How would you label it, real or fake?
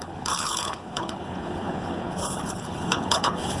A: fake